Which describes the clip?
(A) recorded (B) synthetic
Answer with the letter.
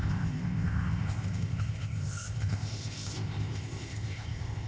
B